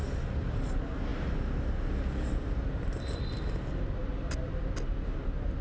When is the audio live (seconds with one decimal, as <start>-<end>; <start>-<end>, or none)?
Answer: 0.0-5.6